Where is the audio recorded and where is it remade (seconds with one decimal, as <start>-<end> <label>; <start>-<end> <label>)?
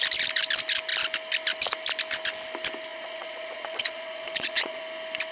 0.0-2.9 recorded; 2.9-4.8 remade; 4.8-5.3 recorded